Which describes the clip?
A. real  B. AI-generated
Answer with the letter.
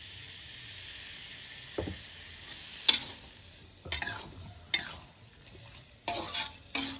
A